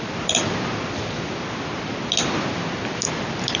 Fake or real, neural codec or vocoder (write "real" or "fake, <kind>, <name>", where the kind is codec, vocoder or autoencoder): real